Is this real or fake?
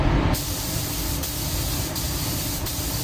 fake